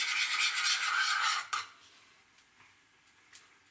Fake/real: real